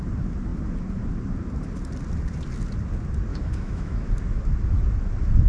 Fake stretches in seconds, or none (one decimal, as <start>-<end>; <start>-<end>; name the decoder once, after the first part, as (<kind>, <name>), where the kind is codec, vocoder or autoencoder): 3.3-4.1 (autoencoder, DAC-VAE)